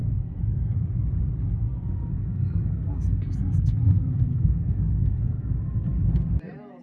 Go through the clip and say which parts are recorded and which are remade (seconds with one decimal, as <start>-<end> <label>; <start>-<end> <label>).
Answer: 0.0-0.8 remade; 0.8-1.4 recorded; 1.4-5.5 remade; 5.5-6.8 recorded